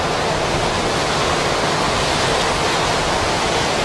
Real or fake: real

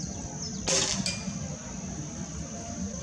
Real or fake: real